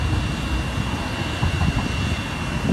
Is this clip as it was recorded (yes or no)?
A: yes